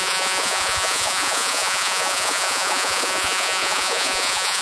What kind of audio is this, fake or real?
fake